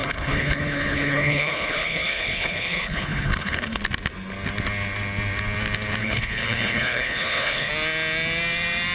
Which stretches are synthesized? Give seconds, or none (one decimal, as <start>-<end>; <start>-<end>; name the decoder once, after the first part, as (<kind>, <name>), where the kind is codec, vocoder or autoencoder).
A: 0.0-3.8 (codec, HILCodec); 6.0-7.7